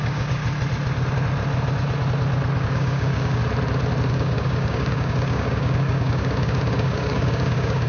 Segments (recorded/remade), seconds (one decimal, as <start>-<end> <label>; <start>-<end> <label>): 0.0-0.4 remade; 0.4-2.6 recorded; 2.6-3.4 remade; 3.4-4.1 recorded; 4.1-7.9 remade